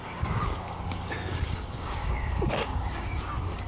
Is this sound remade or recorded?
remade